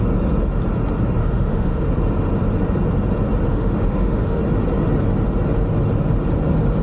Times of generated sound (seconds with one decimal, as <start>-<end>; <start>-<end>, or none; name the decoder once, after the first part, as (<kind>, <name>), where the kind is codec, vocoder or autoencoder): 1.2-1.8 (autoencoder, DAC-VAE); 3.5-4.4